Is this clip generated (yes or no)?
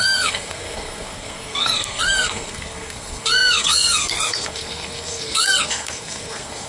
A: yes